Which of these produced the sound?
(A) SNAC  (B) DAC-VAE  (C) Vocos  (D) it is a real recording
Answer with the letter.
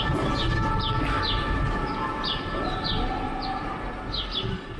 D